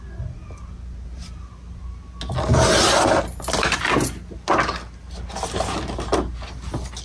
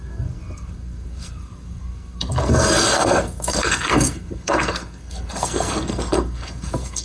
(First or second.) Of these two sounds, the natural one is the first